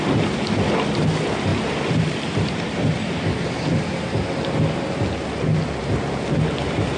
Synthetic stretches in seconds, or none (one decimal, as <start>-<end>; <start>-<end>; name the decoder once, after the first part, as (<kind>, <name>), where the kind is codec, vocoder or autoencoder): 1.5-4.3 (vocoder, BigVGAN v2)